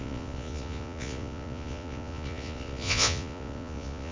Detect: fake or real fake